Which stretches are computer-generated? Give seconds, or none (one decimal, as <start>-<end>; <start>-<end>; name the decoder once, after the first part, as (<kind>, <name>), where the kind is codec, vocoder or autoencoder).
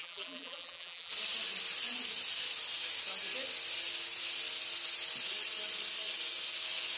0.0-1.1 (vocoder, BigVGAN v2)